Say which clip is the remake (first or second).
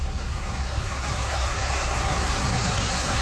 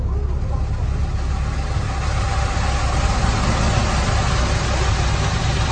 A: first